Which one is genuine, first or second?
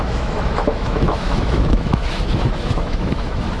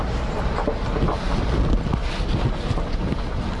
second